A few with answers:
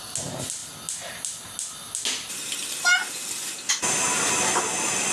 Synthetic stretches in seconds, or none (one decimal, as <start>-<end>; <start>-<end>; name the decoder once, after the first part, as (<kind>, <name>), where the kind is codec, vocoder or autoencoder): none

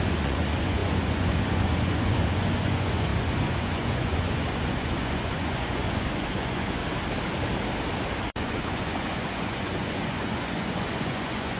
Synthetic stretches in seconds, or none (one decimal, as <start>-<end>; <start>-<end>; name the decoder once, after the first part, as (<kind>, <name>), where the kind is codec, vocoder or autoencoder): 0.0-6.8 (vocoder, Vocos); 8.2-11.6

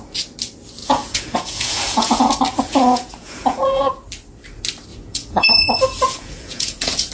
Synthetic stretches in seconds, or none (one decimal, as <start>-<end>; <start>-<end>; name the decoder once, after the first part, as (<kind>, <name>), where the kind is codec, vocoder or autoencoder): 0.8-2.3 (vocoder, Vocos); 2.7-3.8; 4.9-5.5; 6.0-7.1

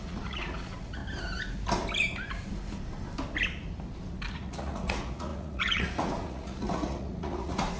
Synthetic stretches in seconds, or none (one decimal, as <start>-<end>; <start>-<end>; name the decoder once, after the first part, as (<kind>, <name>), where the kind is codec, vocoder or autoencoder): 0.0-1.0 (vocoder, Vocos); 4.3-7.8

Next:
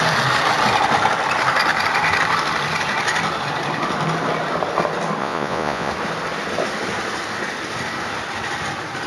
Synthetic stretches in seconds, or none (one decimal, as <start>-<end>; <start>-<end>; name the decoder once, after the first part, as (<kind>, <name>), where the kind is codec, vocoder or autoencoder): 5.2-5.9 (vocoder, Vocos)